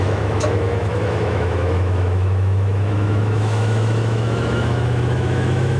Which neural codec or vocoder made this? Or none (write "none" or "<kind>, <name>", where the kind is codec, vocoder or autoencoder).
autoencoder, DAC-VAE